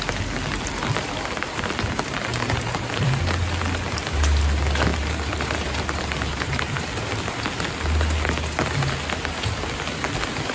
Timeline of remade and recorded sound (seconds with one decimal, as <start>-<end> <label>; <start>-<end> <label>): 0.0-2.3 recorded; 2.3-3.2 remade; 3.2-4.9 recorded; 4.9-6.6 remade; 6.6-10.5 recorded